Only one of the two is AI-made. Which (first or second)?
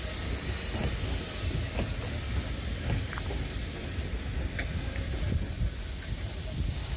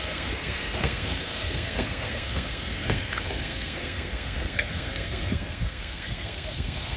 second